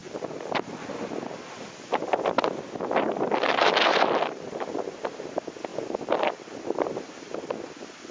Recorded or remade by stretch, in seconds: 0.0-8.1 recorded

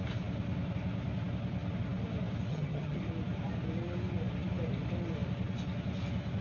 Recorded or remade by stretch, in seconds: 0.0-2.5 recorded; 2.5-3.0 remade; 3.0-6.4 recorded

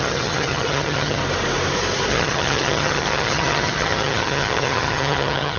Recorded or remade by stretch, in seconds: 0.0-1.2 remade; 1.2-2.1 recorded; 2.1-5.6 remade

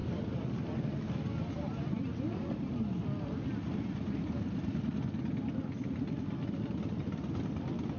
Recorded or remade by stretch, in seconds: 0.0-8.0 recorded

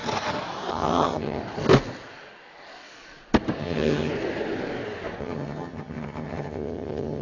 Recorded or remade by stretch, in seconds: 0.0-0.7 recorded; 0.7-1.4 remade; 1.4-3.6 recorded; 3.6-4.1 remade; 4.1-5.2 recorded; 5.2-7.2 remade

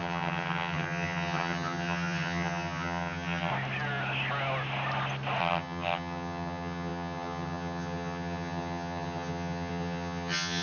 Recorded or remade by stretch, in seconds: 0.0-3.5 remade; 3.5-5.4 recorded; 5.4-10.6 remade

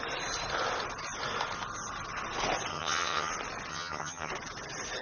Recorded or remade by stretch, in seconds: 0.0-2.7 recorded; 2.7-3.3 remade; 3.3-3.7 recorded; 3.7-4.3 remade; 4.3-5.0 recorded